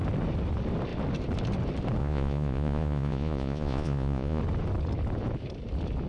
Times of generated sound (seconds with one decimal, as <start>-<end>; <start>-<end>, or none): 2.0-4.4